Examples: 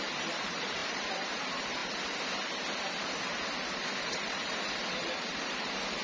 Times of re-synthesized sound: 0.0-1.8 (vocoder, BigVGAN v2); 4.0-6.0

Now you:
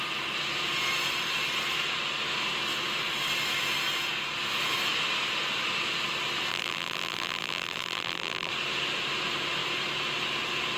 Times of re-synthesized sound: 6.5-8.5 (vocoder, BigVGAN v2)

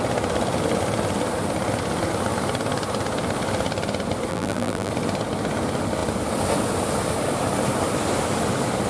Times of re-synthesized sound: 4.3-4.9 (vocoder, BigVGAN v2)

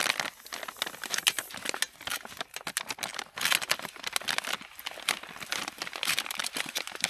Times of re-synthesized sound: 4.3-7.1 (vocoder, BigVGAN v2)

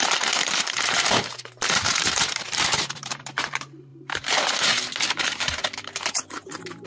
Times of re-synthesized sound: 0.0-3.9 (vocoder, BigVGAN v2); 5.1-6.9

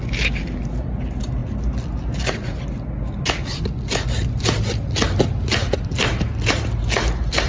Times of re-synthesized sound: none